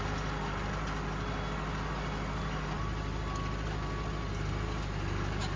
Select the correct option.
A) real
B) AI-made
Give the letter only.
A